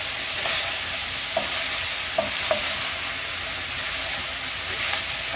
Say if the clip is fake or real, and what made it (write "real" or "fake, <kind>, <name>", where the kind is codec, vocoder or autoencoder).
real